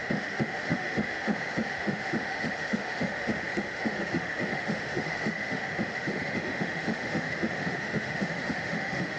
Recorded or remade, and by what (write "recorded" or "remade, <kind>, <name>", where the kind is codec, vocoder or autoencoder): remade, autoencoder, DAC-VAE